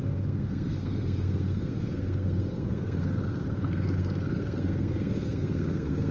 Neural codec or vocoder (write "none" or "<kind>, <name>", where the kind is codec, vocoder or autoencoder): codec, SNAC